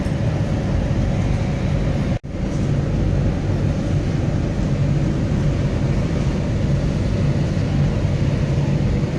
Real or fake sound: real